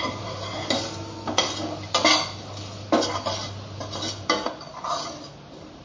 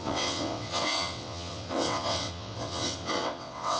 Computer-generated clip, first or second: second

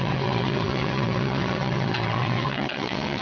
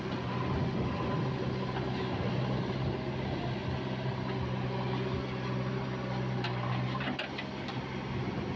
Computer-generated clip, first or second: first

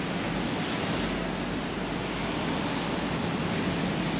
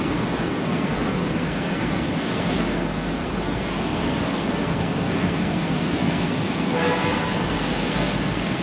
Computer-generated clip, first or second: second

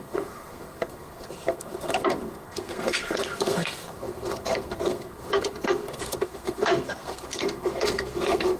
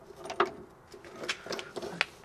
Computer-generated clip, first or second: first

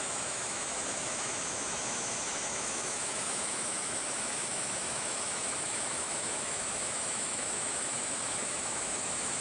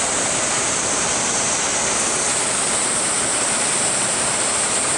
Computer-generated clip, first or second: first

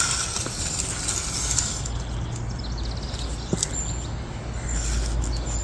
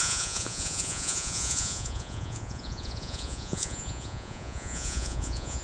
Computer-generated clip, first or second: second